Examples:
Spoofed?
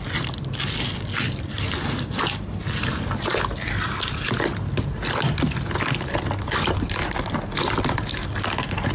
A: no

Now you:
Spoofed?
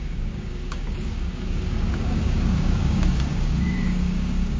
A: yes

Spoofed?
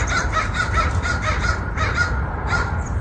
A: yes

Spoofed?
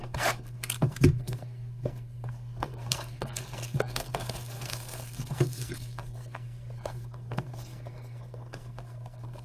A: yes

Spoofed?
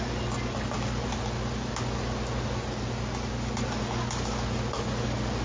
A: no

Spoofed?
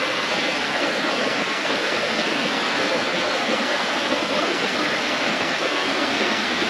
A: yes